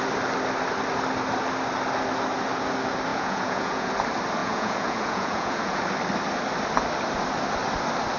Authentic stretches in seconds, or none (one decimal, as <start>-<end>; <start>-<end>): 0.0-3.1; 3.9-4.4; 5.8-8.2